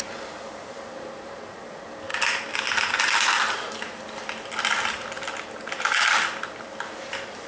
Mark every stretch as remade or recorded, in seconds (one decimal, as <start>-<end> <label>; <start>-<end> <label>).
0.0-7.5 recorded